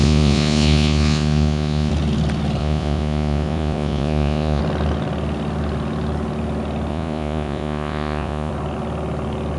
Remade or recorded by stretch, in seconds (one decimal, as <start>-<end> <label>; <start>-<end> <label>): 0.0-1.9 remade; 1.9-2.6 recorded; 2.6-4.6 remade; 4.6-6.9 recorded; 6.9-8.5 remade; 8.5-9.6 recorded